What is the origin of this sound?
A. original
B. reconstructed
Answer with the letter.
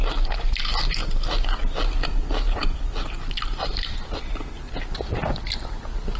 A